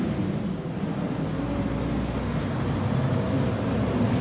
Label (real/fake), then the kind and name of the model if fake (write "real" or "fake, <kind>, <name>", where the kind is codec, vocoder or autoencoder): real